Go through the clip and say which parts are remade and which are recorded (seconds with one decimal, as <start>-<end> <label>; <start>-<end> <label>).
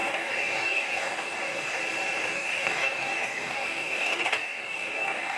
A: 0.0-1.8 remade; 1.8-2.2 recorded; 2.2-5.4 remade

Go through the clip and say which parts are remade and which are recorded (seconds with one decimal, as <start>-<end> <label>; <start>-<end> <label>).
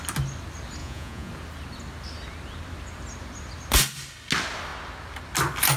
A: 0.0-0.8 recorded; 0.8-1.3 remade; 1.3-5.8 recorded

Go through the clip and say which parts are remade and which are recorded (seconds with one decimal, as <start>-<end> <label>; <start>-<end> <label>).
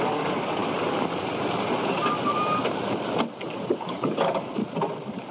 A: 0.0-0.6 remade; 0.6-3.8 recorded; 3.8-4.6 remade; 4.6-5.3 recorded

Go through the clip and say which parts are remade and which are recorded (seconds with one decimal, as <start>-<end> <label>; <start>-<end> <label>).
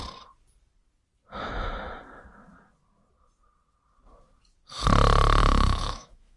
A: 0.0-5.4 recorded; 5.4-6.4 remade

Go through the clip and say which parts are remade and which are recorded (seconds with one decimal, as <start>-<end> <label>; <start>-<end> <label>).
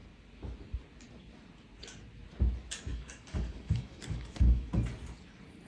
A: 0.0-2.9 recorded; 2.9-4.7 remade; 4.7-5.7 recorded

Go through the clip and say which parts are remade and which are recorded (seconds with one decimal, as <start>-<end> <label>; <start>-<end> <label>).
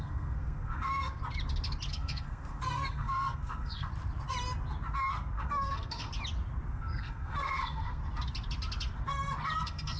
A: 0.0-1.2 remade; 1.2-1.9 recorded; 1.9-3.9 remade; 3.9-5.1 recorded; 5.1-6.1 remade; 6.1-6.7 recorded; 6.7-8.0 remade; 8.0-9.6 recorded; 9.6-10.0 remade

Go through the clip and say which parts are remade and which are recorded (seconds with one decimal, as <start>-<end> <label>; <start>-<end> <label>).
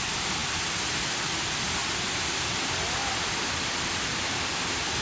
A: 0.0-5.0 recorded